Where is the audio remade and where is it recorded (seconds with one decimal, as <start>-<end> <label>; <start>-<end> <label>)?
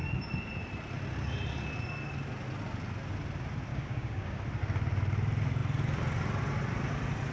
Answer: 0.0-3.7 recorded; 3.7-4.4 remade; 4.4-7.3 recorded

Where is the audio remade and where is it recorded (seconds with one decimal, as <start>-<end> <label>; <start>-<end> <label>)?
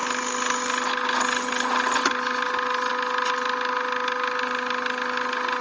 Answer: 0.0-5.6 recorded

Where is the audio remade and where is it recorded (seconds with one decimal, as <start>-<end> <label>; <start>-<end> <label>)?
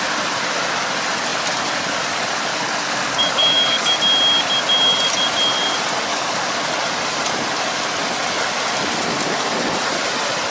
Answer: 0.0-2.5 recorded; 2.5-4.0 remade; 4.0-6.1 recorded; 6.1-6.6 remade; 6.6-10.5 recorded